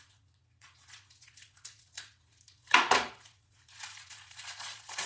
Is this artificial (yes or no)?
yes